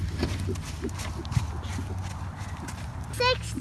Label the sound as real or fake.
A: real